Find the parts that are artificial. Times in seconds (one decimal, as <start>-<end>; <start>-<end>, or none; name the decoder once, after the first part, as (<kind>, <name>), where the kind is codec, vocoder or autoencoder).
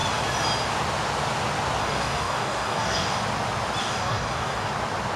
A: 1.8-3.2 (codec, DAC); 3.8-4.7